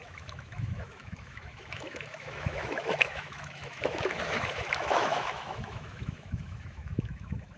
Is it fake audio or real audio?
fake